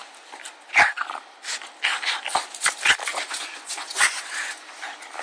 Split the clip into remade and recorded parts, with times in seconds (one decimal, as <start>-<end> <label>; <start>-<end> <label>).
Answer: 0.0-3.1 recorded; 3.1-4.8 remade; 4.8-5.2 recorded

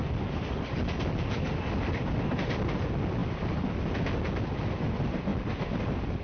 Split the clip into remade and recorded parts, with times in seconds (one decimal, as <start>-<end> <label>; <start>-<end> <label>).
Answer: 0.0-6.2 recorded

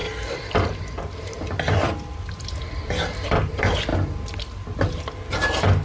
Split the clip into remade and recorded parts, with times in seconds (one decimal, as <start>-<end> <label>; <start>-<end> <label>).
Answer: 0.0-3.5 remade; 3.5-5.8 recorded

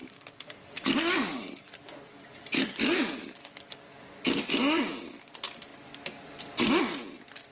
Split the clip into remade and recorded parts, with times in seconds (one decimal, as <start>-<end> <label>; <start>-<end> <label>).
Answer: 0.0-4.4 remade; 4.4-7.5 recorded

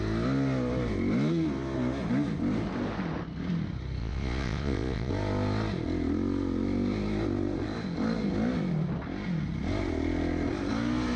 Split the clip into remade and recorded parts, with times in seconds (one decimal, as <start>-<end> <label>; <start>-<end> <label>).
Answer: 0.0-4.0 recorded; 4.0-5.1 remade; 5.1-11.2 recorded